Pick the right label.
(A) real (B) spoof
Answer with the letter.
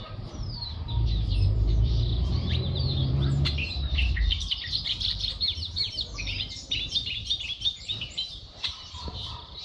B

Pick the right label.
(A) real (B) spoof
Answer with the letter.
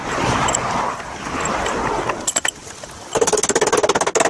A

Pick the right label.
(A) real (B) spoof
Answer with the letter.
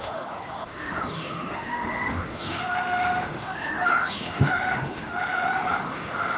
B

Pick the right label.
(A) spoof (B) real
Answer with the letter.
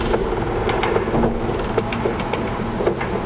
B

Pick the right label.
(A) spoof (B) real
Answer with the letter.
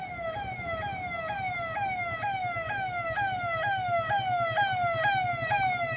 B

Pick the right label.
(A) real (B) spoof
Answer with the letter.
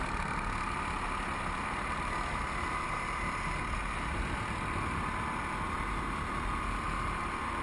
A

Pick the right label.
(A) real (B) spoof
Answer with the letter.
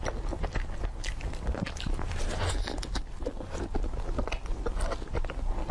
A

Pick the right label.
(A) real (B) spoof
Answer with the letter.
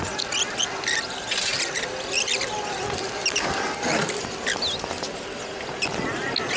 A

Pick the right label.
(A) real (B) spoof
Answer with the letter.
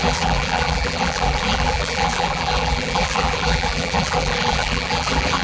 B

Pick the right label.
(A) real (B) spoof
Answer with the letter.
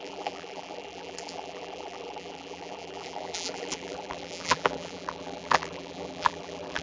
B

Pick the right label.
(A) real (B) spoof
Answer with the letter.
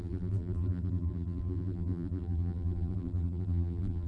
B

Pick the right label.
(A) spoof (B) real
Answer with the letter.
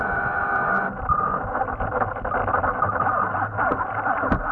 B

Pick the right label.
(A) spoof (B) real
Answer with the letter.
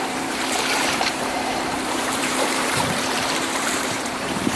A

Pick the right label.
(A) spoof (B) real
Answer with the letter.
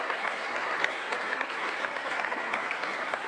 A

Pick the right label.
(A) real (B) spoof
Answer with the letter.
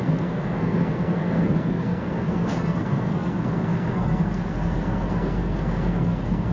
B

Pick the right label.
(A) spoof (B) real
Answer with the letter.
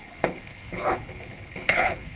A